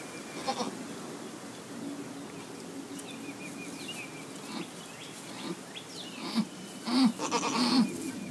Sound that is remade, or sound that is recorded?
recorded